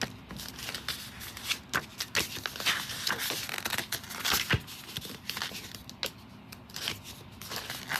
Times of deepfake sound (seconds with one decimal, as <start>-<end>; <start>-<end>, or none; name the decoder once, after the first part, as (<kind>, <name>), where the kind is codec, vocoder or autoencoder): none